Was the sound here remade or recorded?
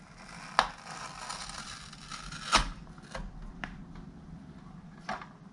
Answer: recorded